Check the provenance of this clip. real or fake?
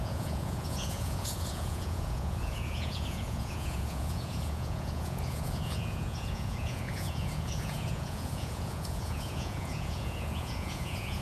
fake